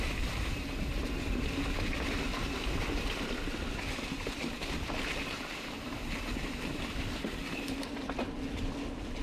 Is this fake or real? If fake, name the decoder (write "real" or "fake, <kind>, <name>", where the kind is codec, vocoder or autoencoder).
real